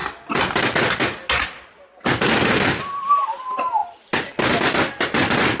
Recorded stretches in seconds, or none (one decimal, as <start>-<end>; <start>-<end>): 0.0-5.6